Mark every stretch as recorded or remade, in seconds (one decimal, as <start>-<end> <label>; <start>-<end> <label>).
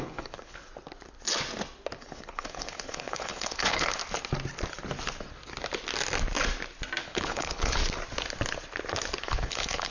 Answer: 0.0-0.7 remade; 0.7-2.0 recorded; 2.0-4.0 remade; 4.0-7.0 recorded; 7.0-7.8 remade; 7.8-9.2 recorded; 9.2-9.9 remade